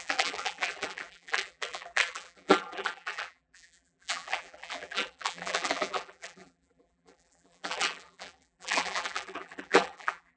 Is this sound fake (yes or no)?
yes